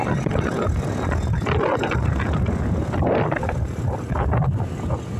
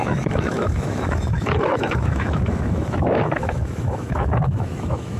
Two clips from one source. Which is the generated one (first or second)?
second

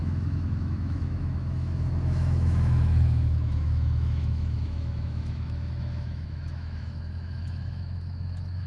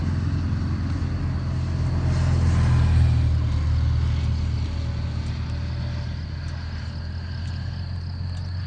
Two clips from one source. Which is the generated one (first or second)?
first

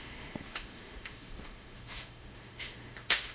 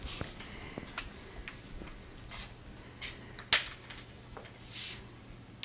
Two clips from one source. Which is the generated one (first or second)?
first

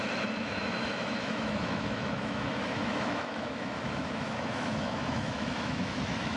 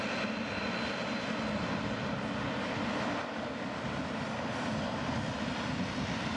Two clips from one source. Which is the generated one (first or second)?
first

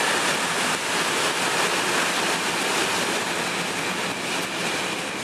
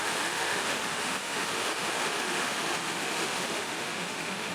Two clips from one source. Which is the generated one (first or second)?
second